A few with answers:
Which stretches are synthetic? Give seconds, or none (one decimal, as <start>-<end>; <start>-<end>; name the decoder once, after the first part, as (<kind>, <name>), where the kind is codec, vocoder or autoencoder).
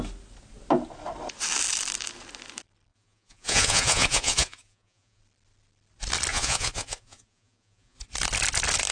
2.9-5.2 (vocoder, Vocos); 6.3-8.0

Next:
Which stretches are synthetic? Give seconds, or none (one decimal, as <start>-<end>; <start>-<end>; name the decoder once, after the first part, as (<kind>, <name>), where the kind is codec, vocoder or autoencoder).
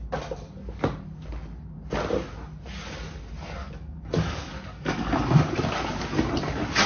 3.6-5.2 (codec, DAC)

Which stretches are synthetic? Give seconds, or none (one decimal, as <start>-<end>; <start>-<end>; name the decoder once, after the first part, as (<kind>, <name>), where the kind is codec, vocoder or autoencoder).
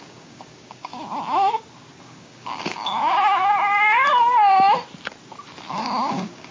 0.0-0.9 (codec, DAC); 2.0-3.4; 5.7-6.5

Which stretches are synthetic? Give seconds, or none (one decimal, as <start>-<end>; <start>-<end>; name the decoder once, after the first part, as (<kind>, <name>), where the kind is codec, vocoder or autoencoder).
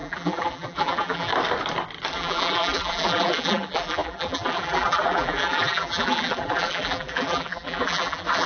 0.0-1.3 (vocoder, BigVGAN v2); 2.1-8.5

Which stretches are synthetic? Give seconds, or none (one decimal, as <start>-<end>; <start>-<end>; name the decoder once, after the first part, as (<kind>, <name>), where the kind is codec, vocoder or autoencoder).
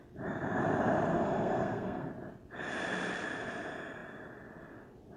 1.1-2.1 (codec, SNAC)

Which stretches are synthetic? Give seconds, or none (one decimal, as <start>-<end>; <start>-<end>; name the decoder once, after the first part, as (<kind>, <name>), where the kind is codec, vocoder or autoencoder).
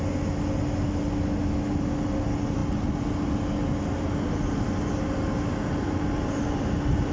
none